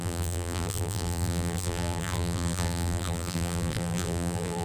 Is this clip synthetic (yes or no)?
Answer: yes